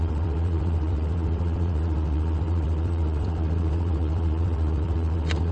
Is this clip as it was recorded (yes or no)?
no